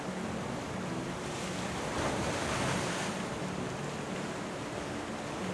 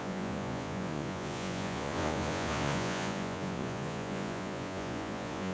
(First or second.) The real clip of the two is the first